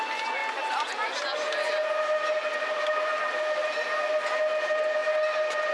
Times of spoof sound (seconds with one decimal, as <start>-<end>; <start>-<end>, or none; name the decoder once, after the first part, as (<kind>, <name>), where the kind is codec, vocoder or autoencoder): none